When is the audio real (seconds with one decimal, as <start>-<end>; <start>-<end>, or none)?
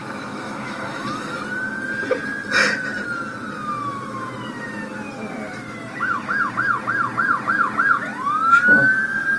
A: 1.4-9.4